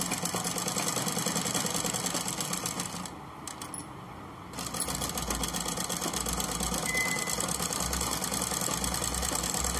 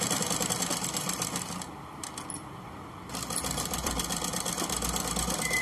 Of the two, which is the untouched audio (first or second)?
first